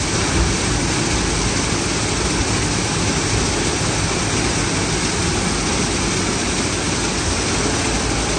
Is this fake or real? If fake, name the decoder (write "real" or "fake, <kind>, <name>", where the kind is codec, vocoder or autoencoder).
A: real